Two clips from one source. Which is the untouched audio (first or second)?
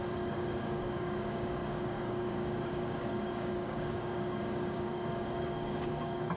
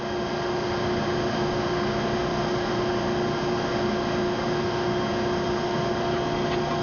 second